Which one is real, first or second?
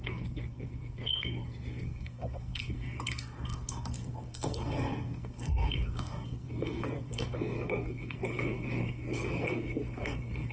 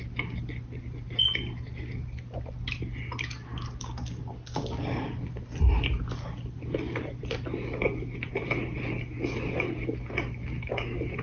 second